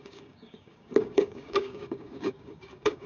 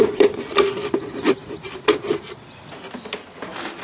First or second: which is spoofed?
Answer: first